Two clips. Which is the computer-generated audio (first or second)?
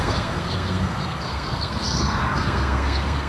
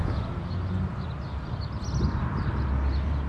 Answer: first